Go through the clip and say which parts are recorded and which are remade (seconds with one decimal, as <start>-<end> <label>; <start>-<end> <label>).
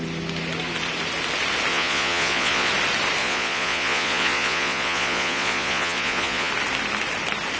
0.0-1.7 recorded; 1.7-2.7 remade; 2.7-3.2 recorded; 3.2-6.5 remade; 6.5-7.6 recorded